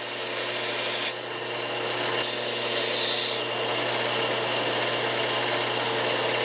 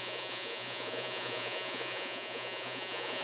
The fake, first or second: second